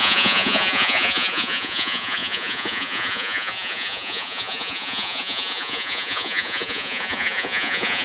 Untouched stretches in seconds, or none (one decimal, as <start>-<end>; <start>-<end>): none